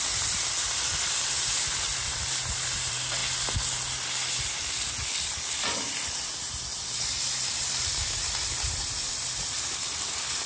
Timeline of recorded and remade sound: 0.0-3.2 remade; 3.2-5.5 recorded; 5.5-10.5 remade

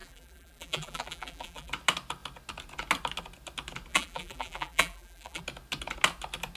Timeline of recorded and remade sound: 0.0-1.7 remade; 1.7-3.9 recorded; 3.9-5.4 remade; 5.4-6.6 recorded